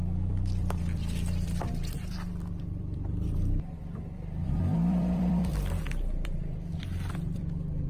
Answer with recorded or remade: remade